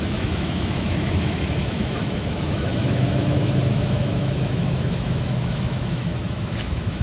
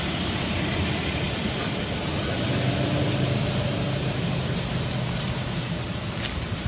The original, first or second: second